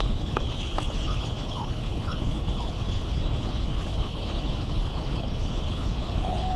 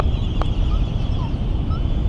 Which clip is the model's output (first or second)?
first